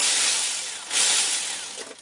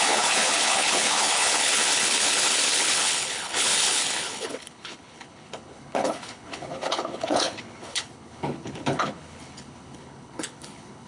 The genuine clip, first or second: first